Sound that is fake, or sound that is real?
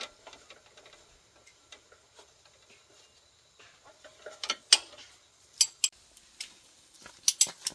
real